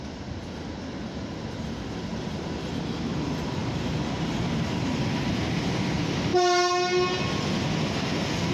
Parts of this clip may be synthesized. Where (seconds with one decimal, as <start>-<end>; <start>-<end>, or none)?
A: 2.1-2.7; 3.6-5.3

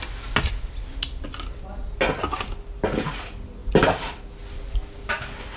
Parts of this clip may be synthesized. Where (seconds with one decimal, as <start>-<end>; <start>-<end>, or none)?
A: none

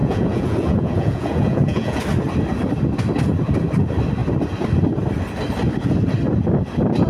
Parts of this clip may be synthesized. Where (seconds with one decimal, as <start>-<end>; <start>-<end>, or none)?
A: 0.0-2.0

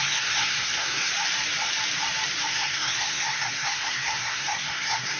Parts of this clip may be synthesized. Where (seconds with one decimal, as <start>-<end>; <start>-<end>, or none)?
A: 0.0-1.1; 2.5-5.2

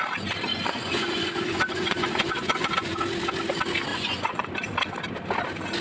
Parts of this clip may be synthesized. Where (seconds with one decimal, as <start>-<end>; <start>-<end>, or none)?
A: 0.5-3.0; 3.9-4.5

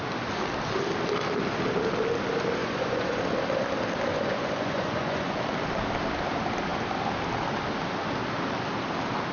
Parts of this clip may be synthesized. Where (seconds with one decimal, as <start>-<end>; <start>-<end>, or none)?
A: 2.6-3.2; 4.1-5.4

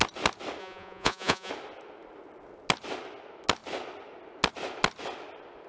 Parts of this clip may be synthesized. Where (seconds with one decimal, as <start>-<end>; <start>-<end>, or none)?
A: 0.6-1.5